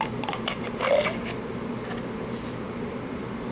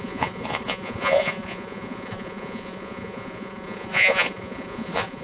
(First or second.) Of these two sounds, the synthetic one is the second